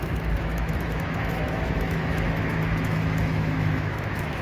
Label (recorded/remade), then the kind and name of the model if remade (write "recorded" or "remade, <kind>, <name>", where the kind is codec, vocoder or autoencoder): remade, autoencoder, DAC-VAE